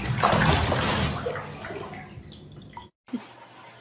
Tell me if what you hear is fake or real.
real